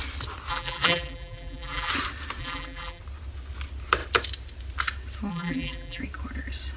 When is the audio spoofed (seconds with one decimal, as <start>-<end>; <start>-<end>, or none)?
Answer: 0.5-1.9; 2.4-3.0; 5.3-6.0